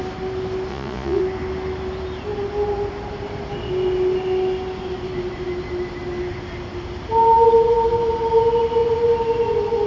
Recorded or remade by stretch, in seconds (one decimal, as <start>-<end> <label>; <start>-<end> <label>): 0.0-0.7 recorded; 0.7-1.2 remade; 1.2-9.9 recorded